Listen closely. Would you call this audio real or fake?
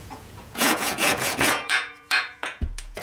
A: fake